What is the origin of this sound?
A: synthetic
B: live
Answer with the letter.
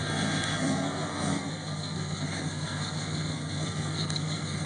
A